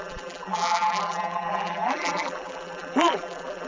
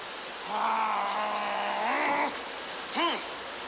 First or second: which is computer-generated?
first